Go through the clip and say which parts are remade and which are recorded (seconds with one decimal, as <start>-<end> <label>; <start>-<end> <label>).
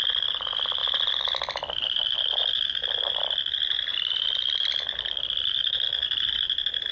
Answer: 0.0-6.9 recorded